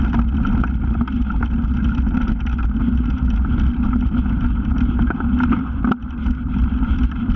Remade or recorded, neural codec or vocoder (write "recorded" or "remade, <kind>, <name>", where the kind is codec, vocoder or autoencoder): recorded